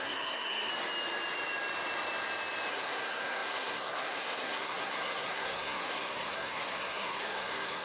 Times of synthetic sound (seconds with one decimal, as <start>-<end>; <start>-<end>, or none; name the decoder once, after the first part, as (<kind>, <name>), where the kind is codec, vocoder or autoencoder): 0.0-0.7 (codec, SNAC); 2.7-7.8

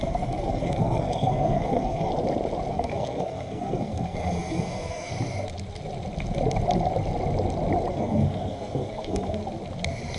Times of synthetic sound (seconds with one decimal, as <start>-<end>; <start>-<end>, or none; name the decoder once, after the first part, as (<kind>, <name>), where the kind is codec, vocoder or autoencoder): 0.0-2.1 (codec, SNAC); 2.7-5.1; 7.9-9.4